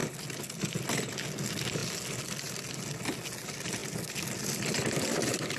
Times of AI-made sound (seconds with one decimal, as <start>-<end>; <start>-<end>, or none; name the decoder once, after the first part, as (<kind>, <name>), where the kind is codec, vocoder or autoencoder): none